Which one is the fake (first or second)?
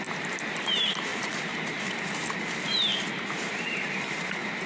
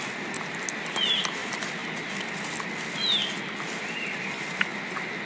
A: first